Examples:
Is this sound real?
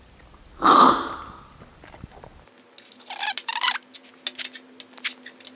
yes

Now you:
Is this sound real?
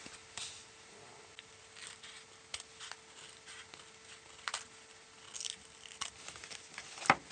yes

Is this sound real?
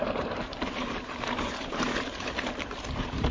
no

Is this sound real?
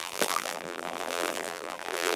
no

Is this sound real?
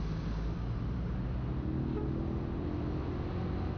yes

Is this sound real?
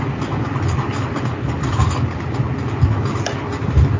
yes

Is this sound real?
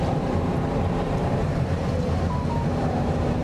no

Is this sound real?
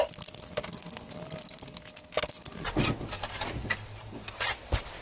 yes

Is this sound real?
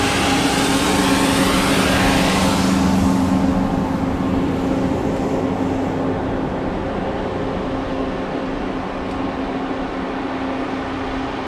yes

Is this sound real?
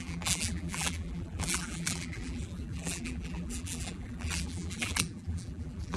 no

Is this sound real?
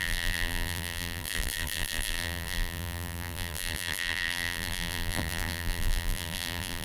no